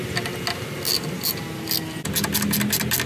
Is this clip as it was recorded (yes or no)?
yes